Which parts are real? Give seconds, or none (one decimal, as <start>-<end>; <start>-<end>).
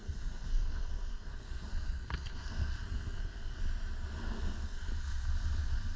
3.6-4.2; 4.9-6.0